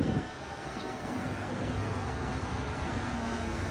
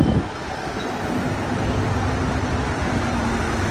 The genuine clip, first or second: second